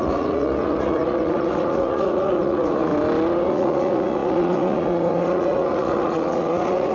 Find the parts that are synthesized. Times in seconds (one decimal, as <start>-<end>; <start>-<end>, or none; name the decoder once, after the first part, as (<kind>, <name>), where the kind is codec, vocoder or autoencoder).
0.0-2.9 (vocoder, Vocos); 3.5-6.9